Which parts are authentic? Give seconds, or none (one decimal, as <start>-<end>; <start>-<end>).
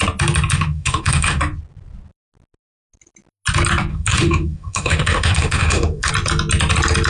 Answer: 0.0-0.5; 1.4-3.9; 6.1-7.1